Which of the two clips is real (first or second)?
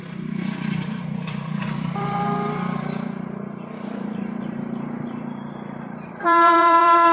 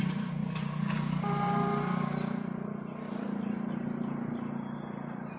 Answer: second